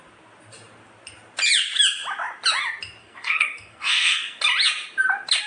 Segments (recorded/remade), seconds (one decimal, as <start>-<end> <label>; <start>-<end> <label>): 0.0-3.0 recorded; 3.0-4.4 remade; 4.4-5.5 recorded